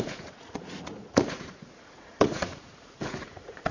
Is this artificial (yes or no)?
yes